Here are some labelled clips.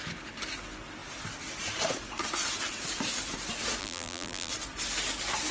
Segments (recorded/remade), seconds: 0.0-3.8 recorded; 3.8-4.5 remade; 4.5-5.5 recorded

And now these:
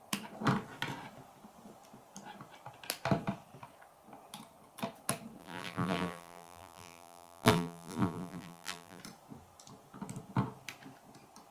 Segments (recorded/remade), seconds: 0.0-5.4 recorded; 5.4-9.0 remade; 9.0-11.5 recorded

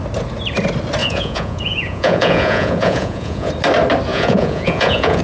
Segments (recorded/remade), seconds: 0.0-1.0 recorded; 1.0-3.5 remade; 3.5-4.1 recorded; 4.1-5.2 remade

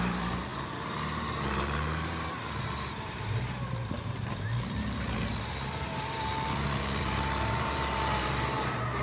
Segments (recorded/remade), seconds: 0.0-6.3 remade; 6.3-7.0 recorded; 7.0-9.0 remade

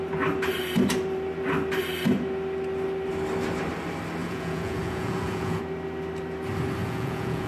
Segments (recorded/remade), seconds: 0.0-4.2 recorded; 4.2-5.6 remade; 5.6-6.8 recorded; 6.8-7.5 remade

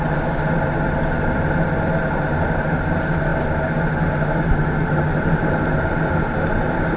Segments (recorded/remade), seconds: 0.0-7.0 recorded

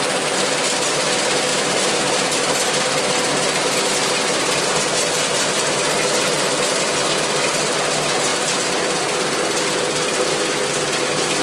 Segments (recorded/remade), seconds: 0.0-1.5 recorded; 1.5-3.1 remade; 3.1-11.4 recorded